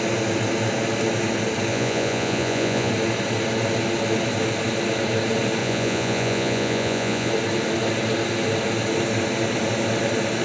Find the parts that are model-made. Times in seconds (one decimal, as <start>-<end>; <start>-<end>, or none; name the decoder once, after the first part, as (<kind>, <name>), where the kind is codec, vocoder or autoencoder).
1.7-2.9 (vocoder, Vocos); 5.6-7.3